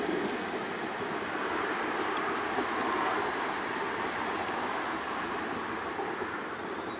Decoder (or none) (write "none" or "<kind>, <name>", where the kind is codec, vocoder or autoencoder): none